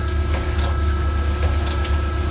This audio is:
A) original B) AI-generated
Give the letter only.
A